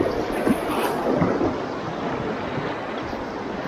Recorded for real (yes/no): yes